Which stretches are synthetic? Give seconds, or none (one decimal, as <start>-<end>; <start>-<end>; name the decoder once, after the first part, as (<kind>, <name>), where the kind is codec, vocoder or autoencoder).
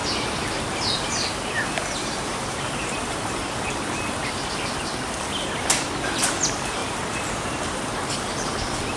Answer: 1.8-3.4 (vocoder, BigVGAN v2); 4.2-4.9; 6.8-7.9